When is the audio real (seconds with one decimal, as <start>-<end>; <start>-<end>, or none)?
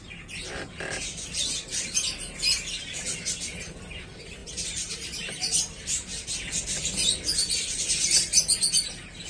0.0-4.4; 5.4-9.3